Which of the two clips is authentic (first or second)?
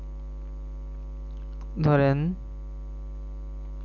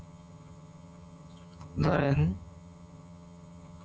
first